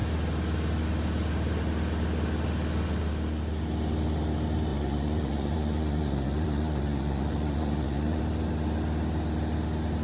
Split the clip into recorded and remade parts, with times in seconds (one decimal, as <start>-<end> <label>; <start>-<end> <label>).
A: 0.0-4.7 recorded; 4.7-8.2 remade; 8.2-10.0 recorded

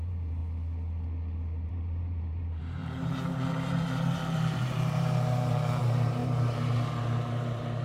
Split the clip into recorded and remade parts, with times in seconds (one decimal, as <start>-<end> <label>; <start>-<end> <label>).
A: 0.0-0.4 remade; 0.4-1.7 recorded; 1.7-7.8 remade

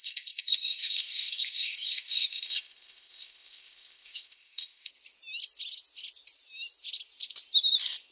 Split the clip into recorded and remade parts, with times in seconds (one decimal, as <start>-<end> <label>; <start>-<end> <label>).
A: 0.0-4.9 remade; 4.9-8.1 recorded

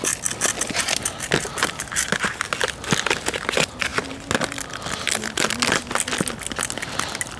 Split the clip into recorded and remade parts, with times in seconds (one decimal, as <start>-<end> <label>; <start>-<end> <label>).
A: 0.0-7.4 recorded

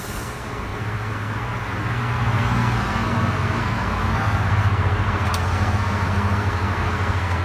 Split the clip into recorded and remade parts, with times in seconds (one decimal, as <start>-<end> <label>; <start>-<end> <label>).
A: 0.0-7.4 remade